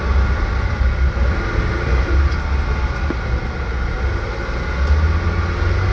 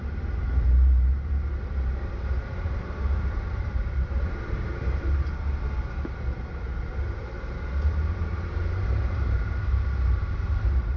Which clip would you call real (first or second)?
first